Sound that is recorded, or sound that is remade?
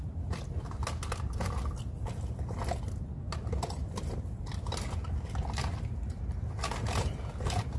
recorded